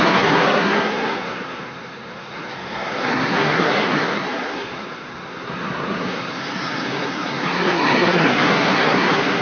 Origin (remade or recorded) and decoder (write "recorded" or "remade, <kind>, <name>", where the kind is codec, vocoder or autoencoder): remade, codec, SNAC